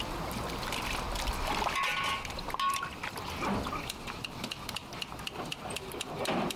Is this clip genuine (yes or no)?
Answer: yes